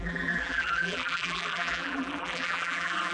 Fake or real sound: fake